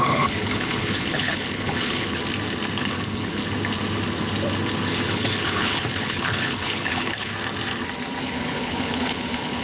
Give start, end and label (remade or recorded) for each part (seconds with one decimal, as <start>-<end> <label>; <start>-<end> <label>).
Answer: 0.0-2.2 remade; 2.2-2.8 recorded; 2.8-3.4 remade; 3.4-5.1 recorded; 5.1-7.3 remade; 7.3-8.2 recorded; 8.2-9.6 remade